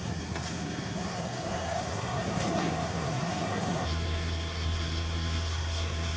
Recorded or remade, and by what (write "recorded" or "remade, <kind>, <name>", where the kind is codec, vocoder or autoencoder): remade, codec, SNAC